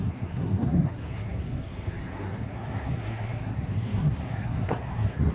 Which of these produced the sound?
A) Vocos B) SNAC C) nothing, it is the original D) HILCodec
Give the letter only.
B